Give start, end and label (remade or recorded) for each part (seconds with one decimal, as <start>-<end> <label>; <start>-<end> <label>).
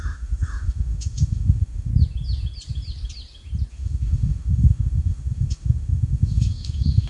0.0-1.9 remade; 1.9-3.7 recorded; 3.7-7.1 remade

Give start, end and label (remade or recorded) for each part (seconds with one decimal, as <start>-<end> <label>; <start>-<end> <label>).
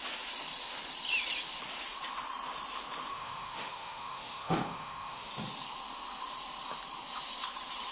0.0-3.1 recorded; 3.1-5.3 remade; 5.3-7.9 recorded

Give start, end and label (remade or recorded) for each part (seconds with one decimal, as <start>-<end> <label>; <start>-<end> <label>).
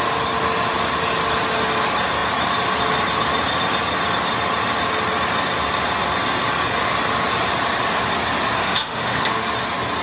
0.0-8.6 recorded; 8.6-9.3 remade; 9.3-10.0 recorded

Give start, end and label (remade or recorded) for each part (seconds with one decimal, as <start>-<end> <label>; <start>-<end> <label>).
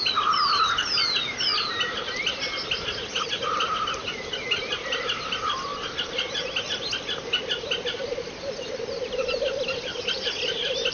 0.0-10.9 recorded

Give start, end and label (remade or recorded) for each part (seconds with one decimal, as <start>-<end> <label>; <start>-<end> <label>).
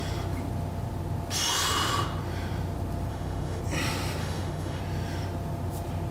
0.0-3.1 recorded; 3.1-3.6 remade; 3.6-4.2 recorded; 4.2-4.8 remade; 4.8-6.1 recorded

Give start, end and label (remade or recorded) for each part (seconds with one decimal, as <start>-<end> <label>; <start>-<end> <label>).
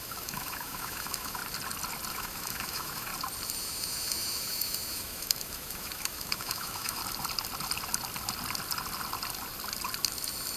0.0-1.4 remade; 1.4-2.1 recorded; 2.1-3.1 remade; 3.1-3.6 recorded; 3.6-7.0 remade; 7.0-10.6 recorded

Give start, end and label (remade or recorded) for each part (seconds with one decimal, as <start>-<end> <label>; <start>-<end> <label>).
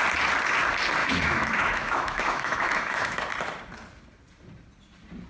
0.0-1.0 recorded; 1.0-3.2 remade; 3.2-5.3 recorded